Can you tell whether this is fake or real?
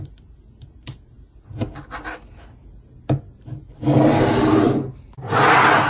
real